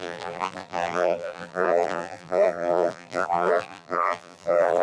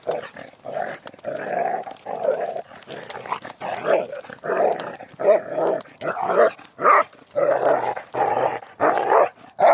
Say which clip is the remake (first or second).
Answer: first